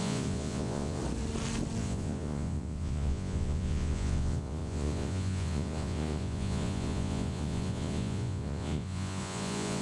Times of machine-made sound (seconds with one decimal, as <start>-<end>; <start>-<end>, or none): 0.0-1.0; 1.8-9.8